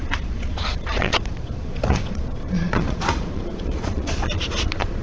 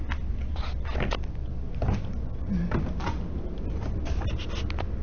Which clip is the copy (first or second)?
first